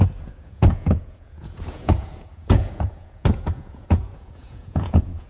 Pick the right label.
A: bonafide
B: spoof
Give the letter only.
B